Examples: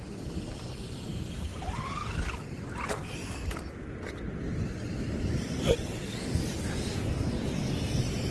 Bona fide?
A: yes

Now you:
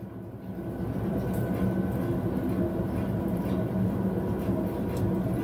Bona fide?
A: yes